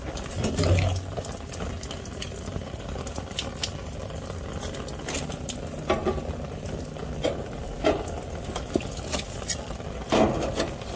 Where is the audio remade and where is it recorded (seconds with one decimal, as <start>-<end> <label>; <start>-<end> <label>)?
0.0-4.0 recorded; 4.0-4.6 remade; 4.6-6.0 recorded; 6.0-7.2 remade; 7.2-11.0 recorded